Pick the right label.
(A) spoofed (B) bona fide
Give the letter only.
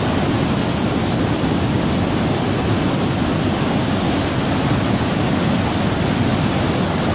B